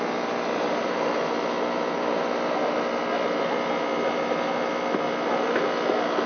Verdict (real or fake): real